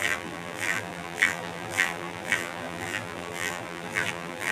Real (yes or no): no